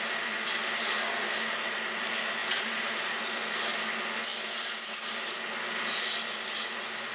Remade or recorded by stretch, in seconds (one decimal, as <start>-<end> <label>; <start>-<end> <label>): 0.0-2.4 recorded; 2.4-3.2 remade; 3.2-7.1 recorded